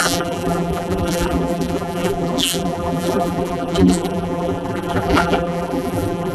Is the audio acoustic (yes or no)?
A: no